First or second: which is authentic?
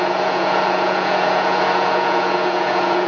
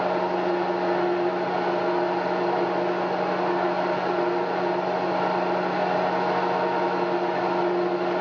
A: second